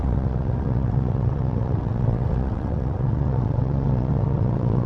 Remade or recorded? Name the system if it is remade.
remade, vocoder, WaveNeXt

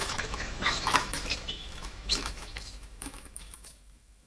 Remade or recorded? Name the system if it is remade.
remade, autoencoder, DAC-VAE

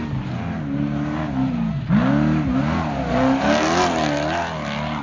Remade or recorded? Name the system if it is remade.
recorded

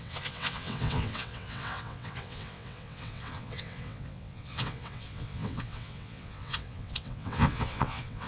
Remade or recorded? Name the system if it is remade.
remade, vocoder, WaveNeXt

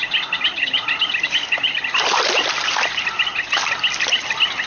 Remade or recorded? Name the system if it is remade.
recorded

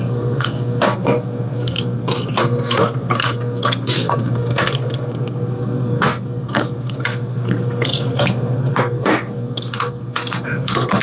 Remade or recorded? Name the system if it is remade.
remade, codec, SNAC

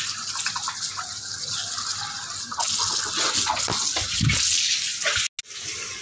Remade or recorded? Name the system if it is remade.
recorded